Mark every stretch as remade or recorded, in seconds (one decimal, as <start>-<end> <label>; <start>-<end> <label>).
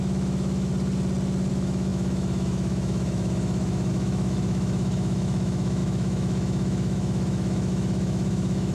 0.0-0.7 remade; 0.7-1.5 recorded; 1.5-8.7 remade